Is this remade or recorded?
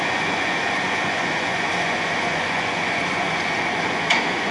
remade